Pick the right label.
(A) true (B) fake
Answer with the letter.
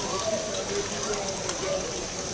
A